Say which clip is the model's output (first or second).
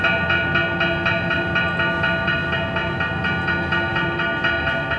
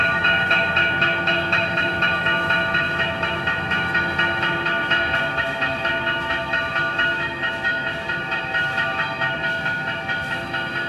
second